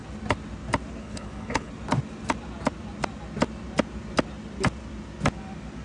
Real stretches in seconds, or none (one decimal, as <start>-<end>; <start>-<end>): 0.0-1.0; 1.7-5.8